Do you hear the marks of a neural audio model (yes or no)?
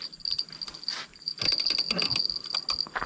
no